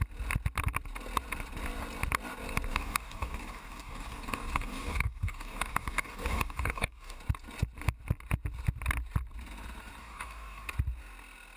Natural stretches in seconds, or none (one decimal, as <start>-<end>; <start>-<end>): 0.0-2.7; 7.2-10.0; 10.7-11.6